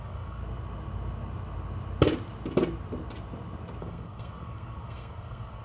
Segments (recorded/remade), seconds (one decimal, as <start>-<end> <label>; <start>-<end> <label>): 0.0-0.4 remade; 0.4-3.8 recorded; 3.8-5.6 remade